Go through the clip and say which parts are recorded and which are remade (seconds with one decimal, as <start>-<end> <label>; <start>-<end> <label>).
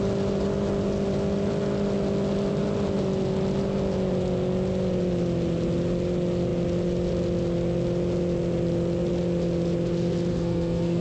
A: 0.0-10.3 recorded; 10.3-11.0 remade